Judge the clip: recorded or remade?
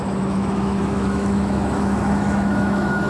remade